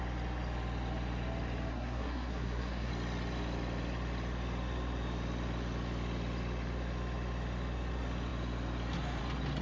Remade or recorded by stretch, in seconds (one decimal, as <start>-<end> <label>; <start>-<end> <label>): 0.0-1.7 recorded; 1.7-2.9 remade; 2.9-9.6 recorded

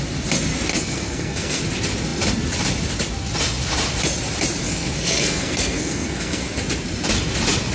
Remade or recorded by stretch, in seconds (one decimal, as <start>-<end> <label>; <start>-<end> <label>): 0.0-0.7 recorded; 0.7-1.6 remade; 1.6-4.6 recorded; 4.6-6.6 remade; 6.6-7.7 recorded

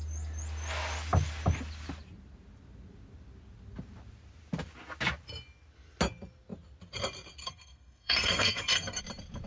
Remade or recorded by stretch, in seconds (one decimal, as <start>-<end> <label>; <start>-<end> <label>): 0.0-7.4 recorded; 7.4-9.0 remade; 9.0-9.5 recorded

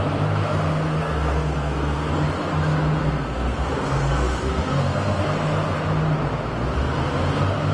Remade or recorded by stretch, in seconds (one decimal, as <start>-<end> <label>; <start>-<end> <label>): 0.0-1.0 recorded; 1.0-2.1 remade; 2.1-3.0 recorded; 3.0-5.2 remade; 5.2-7.7 recorded

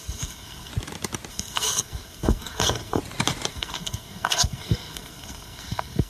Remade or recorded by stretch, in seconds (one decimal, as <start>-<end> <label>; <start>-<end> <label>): 0.0-0.7 remade; 0.7-1.3 recorded; 1.3-3.0 remade; 3.0-3.5 recorded; 3.5-6.1 remade

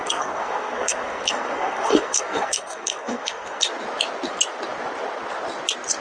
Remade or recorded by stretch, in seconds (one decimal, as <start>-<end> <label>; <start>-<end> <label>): 0.0-3.6 remade; 3.6-6.0 recorded

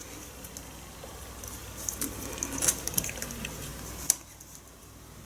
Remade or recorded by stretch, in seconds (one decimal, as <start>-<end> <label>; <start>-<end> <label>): 0.0-5.3 recorded

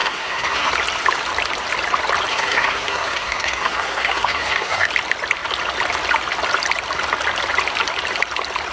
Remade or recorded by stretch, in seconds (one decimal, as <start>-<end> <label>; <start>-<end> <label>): 0.0-0.7 remade; 0.7-2.3 recorded; 2.3-4.9 remade; 4.9-8.7 recorded